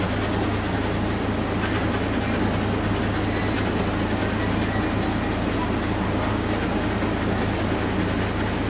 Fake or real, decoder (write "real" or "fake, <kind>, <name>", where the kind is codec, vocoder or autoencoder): real